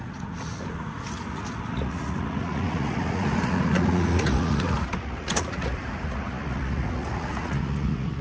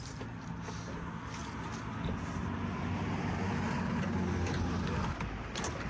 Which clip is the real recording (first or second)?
second